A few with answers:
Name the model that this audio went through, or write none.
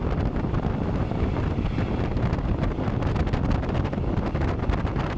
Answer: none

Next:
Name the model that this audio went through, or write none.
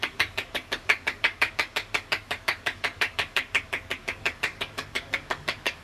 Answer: codec, DAC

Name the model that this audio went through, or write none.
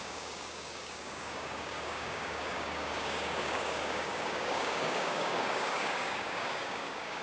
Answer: codec, DAC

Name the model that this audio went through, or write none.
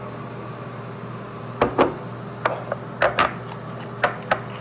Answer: none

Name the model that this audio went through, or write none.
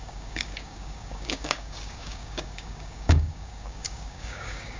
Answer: codec, DAC